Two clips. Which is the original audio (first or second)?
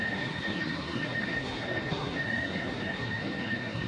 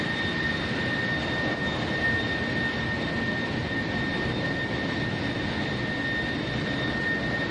second